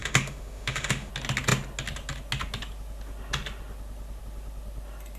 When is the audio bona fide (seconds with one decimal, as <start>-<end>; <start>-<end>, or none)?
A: 1.1-5.2